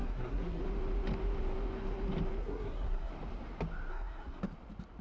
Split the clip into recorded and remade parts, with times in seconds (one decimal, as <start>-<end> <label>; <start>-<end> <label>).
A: 0.0-0.6 remade; 0.6-2.4 recorded; 2.4-3.1 remade; 3.1-3.9 recorded; 3.9-4.4 remade; 4.4-5.0 recorded